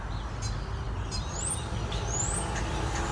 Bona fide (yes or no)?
yes